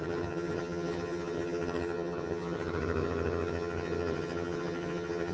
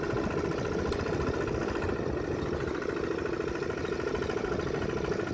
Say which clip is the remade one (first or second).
first